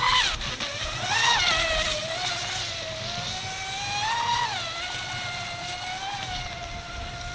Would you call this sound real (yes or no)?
yes